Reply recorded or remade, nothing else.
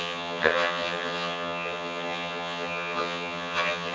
remade